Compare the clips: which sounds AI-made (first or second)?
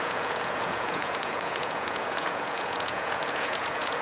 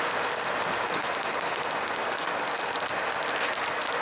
first